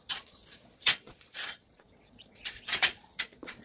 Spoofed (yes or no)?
yes